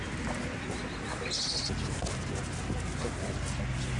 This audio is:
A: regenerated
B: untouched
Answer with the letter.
B